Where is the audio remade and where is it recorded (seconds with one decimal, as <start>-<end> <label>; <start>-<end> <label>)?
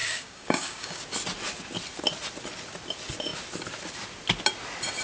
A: 0.0-1.0 remade; 1.0-5.0 recorded